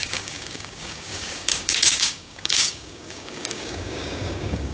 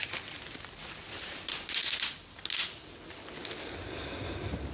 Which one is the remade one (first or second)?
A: first